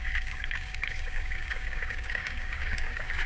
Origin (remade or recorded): remade